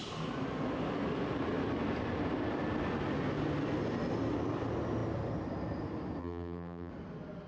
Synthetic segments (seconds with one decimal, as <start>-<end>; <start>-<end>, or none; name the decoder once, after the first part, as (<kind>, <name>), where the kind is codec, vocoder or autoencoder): 6.2-6.9 (vocoder, BigVGAN v2)